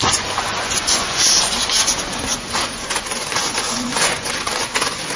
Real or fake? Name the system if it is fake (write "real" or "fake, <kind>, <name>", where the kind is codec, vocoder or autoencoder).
fake, vocoder, Vocos